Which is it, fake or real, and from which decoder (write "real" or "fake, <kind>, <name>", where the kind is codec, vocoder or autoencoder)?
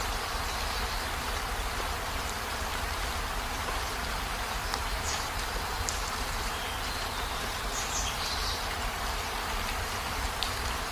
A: fake, vocoder, BigVGAN v2